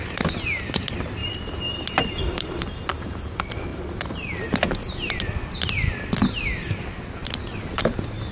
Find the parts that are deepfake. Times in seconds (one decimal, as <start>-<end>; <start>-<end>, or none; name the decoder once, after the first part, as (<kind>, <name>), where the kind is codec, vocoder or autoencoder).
1.2-2.1 (vocoder, BigVGAN v2)